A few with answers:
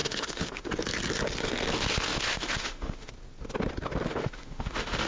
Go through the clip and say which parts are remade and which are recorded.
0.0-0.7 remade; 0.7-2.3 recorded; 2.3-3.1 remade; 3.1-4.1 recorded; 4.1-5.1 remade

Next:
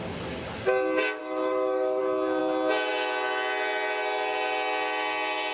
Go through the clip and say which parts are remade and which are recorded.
0.0-1.2 recorded; 1.2-2.0 remade; 2.0-5.5 recorded

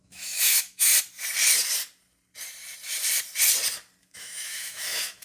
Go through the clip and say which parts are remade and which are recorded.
0.0-0.9 remade; 0.9-4.0 recorded; 4.0-5.2 remade